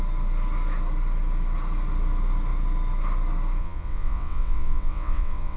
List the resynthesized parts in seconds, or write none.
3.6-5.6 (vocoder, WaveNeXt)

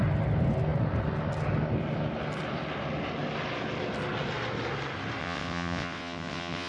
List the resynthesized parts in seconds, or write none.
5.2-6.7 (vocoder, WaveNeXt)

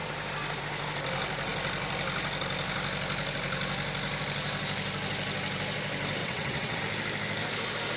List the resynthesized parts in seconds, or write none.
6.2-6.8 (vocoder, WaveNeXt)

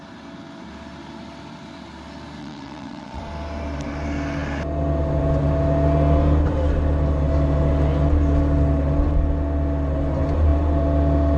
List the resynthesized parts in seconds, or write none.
2.4-3.2 (vocoder, WaveNeXt)